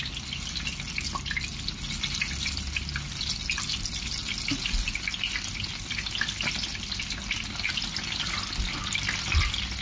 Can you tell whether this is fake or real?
real